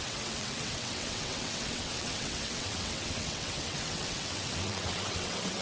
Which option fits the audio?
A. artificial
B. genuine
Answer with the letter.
A